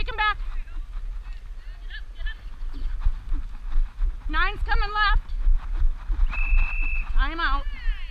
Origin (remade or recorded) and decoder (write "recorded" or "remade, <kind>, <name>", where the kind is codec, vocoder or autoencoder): recorded